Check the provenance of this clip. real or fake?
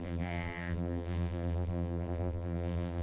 fake